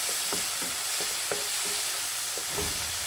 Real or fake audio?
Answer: real